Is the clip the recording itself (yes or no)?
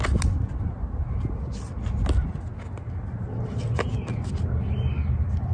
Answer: yes